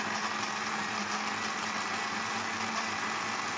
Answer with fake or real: real